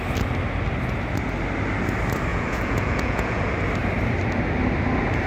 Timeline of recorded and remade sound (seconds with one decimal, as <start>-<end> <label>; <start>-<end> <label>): 0.0-2.3 recorded; 2.3-3.4 remade; 3.4-5.3 recorded